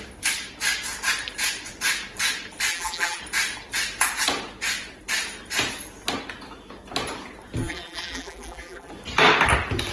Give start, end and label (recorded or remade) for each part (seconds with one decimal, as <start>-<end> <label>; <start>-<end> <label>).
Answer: 0.0-2.7 recorded; 2.7-3.2 remade; 3.2-7.6 recorded; 7.6-8.9 remade; 8.9-9.9 recorded